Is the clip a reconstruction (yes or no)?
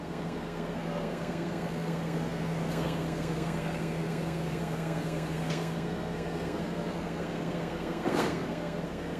yes